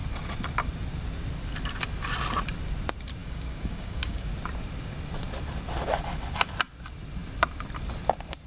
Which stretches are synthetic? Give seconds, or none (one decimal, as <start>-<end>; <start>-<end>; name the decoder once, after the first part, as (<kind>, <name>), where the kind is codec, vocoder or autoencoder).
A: 3.2-4.3 (codec, DAC)